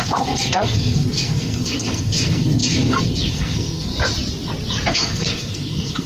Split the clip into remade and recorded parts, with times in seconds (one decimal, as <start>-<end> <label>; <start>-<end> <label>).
0.0-3.9 remade; 3.9-4.9 recorded; 4.9-6.1 remade